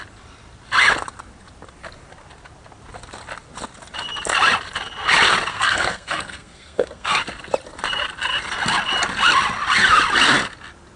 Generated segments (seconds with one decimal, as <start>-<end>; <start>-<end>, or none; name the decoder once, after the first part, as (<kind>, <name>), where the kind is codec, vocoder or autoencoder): 5.5-7.1 (codec, SNAC)